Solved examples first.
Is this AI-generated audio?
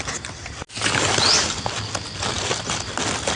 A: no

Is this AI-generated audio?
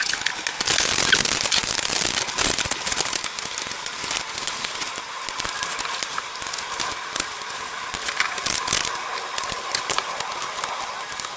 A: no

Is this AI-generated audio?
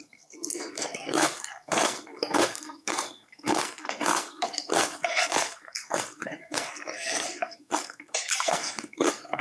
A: yes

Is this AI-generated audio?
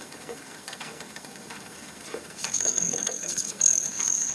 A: yes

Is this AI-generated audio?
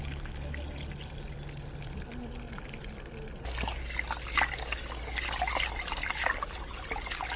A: no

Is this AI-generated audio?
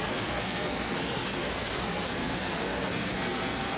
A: yes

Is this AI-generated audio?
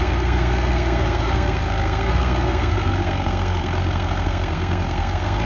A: yes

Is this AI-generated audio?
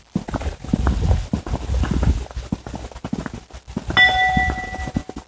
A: no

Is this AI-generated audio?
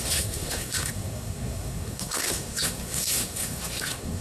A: yes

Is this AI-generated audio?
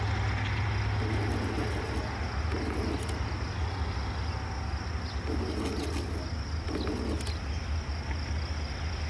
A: no